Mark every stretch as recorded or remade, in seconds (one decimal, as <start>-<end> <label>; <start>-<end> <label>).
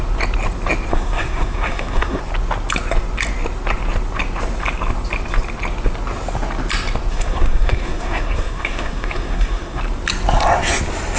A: 0.0-0.9 recorded; 0.9-2.2 remade; 2.2-7.1 recorded; 7.1-9.8 remade; 9.8-11.2 recorded